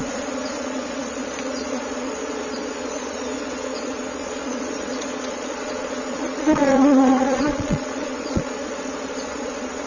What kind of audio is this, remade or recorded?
remade